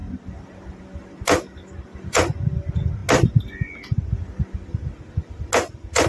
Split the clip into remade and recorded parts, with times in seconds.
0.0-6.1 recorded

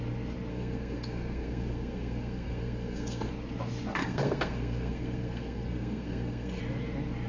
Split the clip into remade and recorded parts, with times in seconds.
0.0-0.5 recorded; 0.5-3.3 remade; 3.3-4.0 recorded; 4.0-6.6 remade; 6.6-7.3 recorded